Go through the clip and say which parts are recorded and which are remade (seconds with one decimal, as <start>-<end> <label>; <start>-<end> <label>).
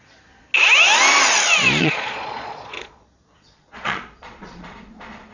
0.0-0.5 remade; 0.5-1.8 recorded; 1.8-5.3 remade